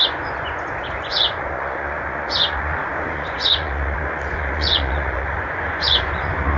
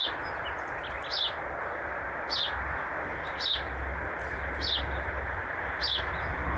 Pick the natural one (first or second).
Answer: second